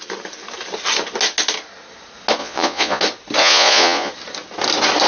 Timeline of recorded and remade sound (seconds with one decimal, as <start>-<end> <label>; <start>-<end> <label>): 0.0-2.4 recorded; 2.4-3.0 remade; 3.0-3.4 recorded; 3.4-4.1 remade; 4.1-5.1 recorded